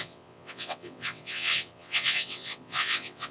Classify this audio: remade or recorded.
remade